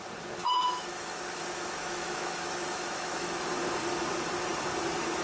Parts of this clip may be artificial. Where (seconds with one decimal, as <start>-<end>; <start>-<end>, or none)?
0.4-3.5